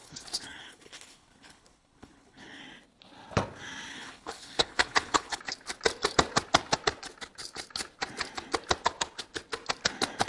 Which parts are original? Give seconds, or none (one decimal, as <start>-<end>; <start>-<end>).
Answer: 2.6-3.9; 5.4-10.3